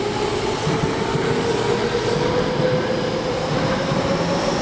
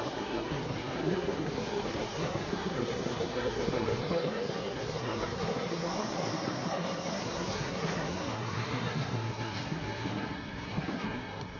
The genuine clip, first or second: first